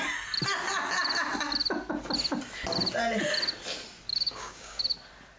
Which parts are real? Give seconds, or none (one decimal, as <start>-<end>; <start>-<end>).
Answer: 0.0-4.1; 4.8-5.4